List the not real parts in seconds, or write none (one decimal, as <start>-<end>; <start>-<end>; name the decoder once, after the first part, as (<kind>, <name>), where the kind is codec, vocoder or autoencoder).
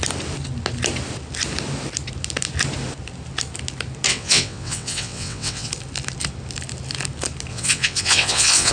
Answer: 4.1-5.7 (vocoder, WaveNeXt); 7.5-8.7